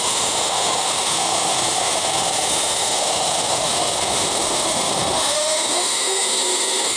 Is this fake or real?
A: fake